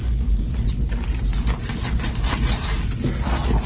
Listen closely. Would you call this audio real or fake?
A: real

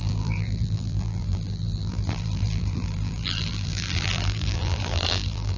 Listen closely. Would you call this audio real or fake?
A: fake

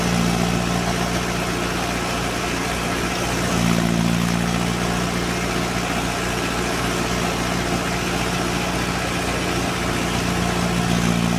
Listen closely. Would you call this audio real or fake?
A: real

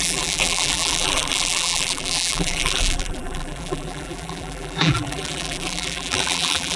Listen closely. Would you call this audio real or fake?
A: fake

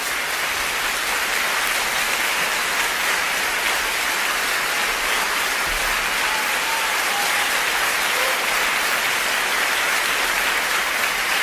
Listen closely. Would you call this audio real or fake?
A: fake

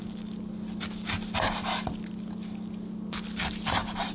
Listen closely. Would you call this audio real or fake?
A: real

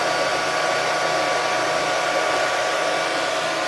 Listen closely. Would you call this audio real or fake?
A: real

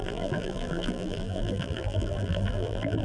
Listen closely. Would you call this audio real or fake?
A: fake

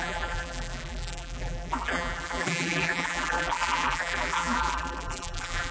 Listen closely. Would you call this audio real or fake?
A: fake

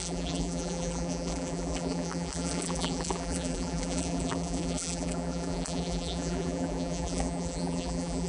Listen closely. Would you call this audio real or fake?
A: fake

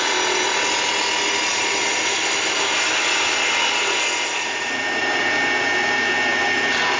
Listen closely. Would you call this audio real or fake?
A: real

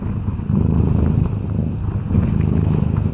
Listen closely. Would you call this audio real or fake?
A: fake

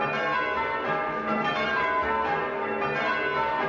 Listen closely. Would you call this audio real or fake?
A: real